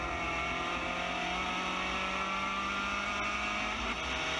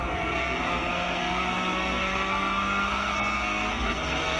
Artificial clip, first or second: second